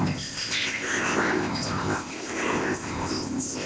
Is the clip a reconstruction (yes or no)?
yes